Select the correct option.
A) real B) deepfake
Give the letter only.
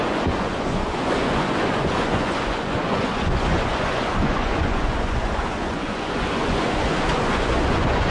B